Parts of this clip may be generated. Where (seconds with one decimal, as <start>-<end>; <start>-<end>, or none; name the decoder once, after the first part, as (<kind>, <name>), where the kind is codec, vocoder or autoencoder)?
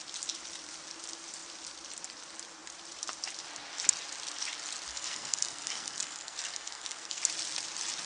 4.9-7.2 (codec, SNAC)